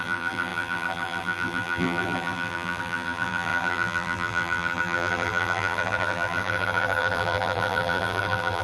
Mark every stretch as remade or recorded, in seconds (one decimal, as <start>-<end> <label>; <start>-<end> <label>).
0.0-8.6 remade